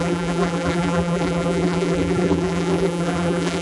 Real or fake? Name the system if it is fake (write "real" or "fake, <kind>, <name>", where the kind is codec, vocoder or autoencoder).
fake, vocoder, BigVGAN v2